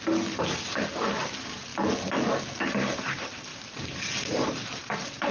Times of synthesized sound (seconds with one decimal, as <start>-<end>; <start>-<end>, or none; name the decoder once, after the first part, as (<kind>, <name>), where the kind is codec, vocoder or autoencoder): 0.0-1.7 (vocoder, BigVGAN v2); 2.6-5.3